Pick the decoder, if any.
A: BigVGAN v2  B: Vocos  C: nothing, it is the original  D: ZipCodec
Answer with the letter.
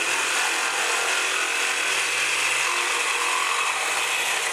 C